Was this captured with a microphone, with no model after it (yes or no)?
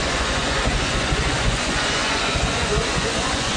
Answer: no